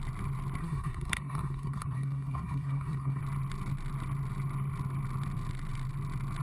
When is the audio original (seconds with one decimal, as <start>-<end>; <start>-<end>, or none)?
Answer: 0.0-0.6; 3.2-6.4